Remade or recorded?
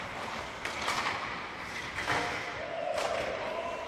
recorded